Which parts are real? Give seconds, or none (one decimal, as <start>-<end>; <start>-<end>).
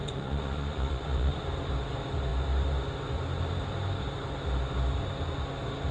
1.4-5.9